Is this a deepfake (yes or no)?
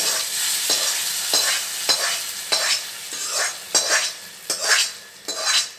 no